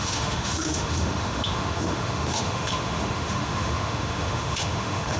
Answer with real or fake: fake